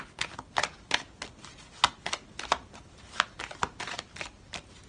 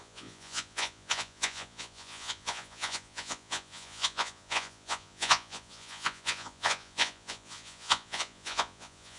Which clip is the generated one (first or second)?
second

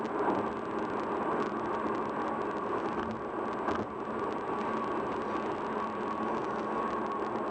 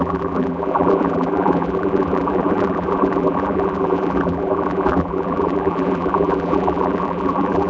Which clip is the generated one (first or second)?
second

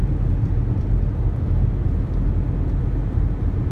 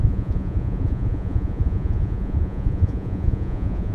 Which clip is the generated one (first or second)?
second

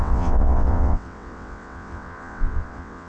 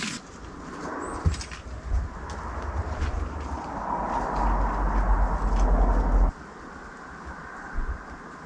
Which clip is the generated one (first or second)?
first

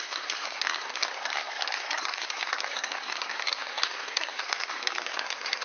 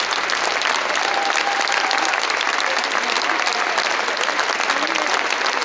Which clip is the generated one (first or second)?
first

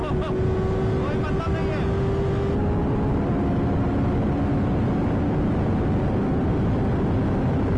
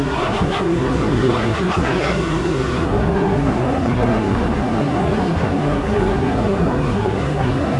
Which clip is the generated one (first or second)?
second